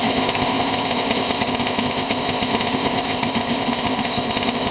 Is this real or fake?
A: fake